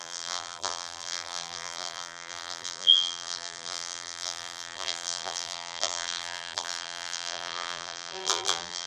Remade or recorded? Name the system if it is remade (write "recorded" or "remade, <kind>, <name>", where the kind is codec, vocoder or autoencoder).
remade, vocoder, BigVGAN v2